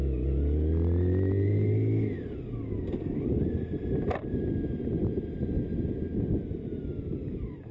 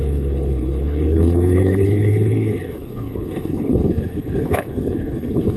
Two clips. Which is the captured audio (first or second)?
first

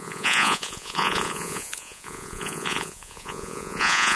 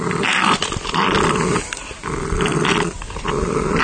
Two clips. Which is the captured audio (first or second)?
second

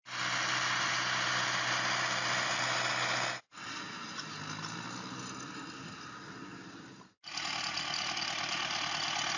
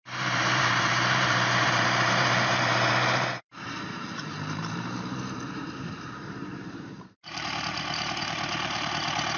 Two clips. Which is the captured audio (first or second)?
first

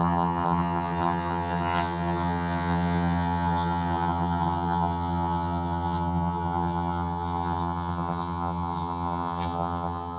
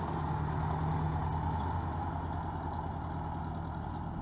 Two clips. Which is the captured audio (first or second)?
second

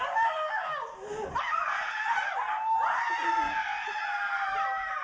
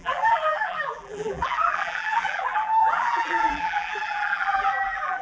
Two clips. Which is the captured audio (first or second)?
first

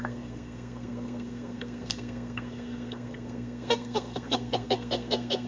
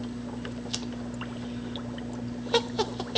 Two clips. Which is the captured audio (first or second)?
second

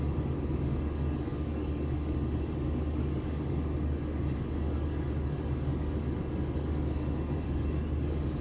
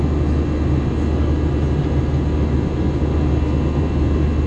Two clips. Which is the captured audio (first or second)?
second